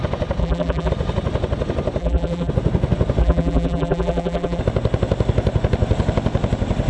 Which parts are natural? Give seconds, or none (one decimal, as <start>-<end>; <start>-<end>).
0.0-0.4; 0.9-2.0; 2.5-3.2; 4.6-6.9